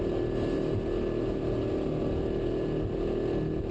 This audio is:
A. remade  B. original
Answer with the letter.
B